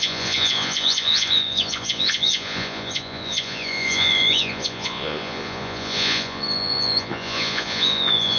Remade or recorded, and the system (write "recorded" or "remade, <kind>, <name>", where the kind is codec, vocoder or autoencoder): remade, vocoder, Vocos